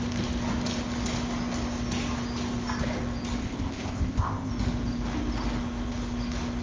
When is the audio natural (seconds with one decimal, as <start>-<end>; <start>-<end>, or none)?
0.0-3.4; 4.5-6.6

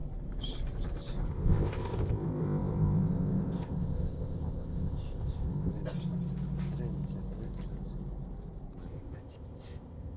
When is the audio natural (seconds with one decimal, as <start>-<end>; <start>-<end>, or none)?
0.0-1.3; 5.7-8.9

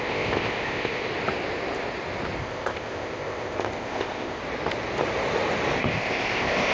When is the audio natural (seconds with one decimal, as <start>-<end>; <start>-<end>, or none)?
1.1-2.4; 4.4-5.8

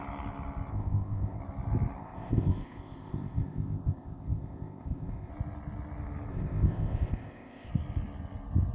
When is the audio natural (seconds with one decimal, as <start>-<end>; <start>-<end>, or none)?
0.0-0.7; 1.4-2.0; 5.3-6.3; 7.7-8.7